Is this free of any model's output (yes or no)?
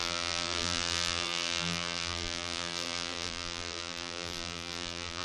no